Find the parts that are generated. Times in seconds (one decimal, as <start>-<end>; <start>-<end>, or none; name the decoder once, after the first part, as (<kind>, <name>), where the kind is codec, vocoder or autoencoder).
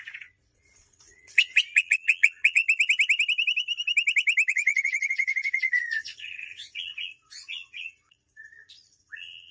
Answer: 0.0-2.6 (vocoder, Vocos); 4.5-9.5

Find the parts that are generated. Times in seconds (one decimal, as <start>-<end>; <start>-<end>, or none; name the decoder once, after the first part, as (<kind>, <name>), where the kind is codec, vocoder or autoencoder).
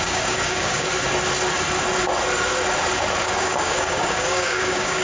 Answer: 0.0-0.9 (codec, DAC); 3.2-5.0